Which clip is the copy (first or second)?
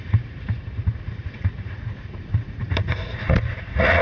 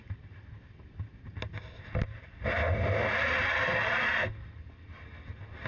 first